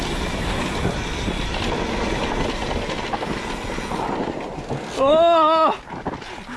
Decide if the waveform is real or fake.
real